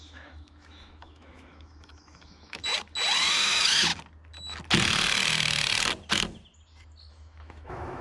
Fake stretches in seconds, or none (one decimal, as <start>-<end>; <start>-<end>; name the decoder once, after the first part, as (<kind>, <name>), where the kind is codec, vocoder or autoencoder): 0.0-2.7 (autoencoder, DAC-VAE); 3.3-3.9; 7.1-8.0